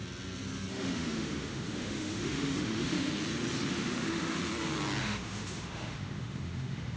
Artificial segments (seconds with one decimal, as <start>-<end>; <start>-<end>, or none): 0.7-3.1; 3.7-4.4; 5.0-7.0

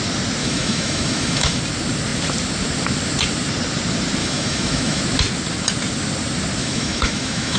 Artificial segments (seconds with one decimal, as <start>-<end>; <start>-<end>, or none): 0.4-1.6; 4.2-5.0; 6.6-7.6

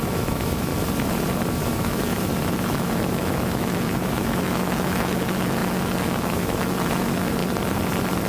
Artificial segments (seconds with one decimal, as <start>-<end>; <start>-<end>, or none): 0.0-0.7; 1.7-7.4